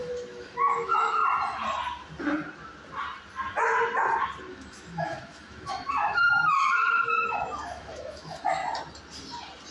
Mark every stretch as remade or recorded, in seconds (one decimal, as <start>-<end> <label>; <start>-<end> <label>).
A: 0.0-1.2 remade; 1.2-4.5 recorded; 4.5-8.6 remade; 8.6-9.7 recorded

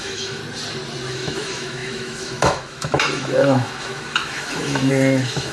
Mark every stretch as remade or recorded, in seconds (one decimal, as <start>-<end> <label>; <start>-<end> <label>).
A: 0.0-0.4 remade; 0.4-1.1 recorded; 1.1-5.5 remade

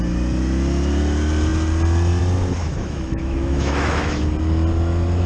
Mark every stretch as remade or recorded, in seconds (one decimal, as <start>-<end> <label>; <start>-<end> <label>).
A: 0.0-2.6 recorded; 2.6-4.2 remade; 4.2-5.3 recorded

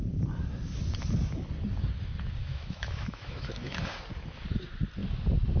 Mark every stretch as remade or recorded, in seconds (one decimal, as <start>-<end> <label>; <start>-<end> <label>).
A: 0.0-2.4 recorded; 2.4-3.8 remade; 3.8-5.6 recorded

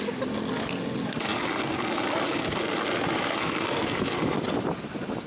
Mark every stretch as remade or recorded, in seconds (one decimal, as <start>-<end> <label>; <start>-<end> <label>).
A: 0.0-5.3 recorded

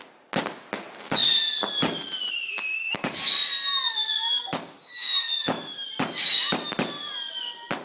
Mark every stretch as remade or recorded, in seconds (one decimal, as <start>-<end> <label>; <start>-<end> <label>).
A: 0.0-4.9 recorded; 4.9-5.9 remade; 5.9-7.8 recorded

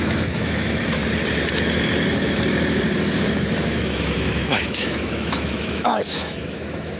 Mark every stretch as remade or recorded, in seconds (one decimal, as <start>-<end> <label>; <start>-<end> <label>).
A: 0.0-1.0 remade; 1.0-3.2 recorded; 3.2-7.0 remade